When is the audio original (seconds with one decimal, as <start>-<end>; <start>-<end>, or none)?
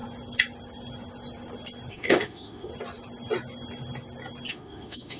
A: 0.0-1.9; 2.7-4.5